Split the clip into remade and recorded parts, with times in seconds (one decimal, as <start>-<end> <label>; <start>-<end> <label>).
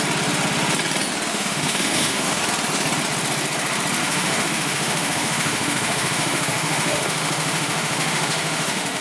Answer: 0.0-1.3 recorded; 1.3-2.4 remade; 2.4-4.0 recorded; 4.0-9.0 remade